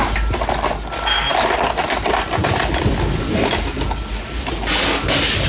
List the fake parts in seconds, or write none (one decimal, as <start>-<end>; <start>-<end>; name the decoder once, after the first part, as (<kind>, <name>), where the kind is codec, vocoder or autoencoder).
none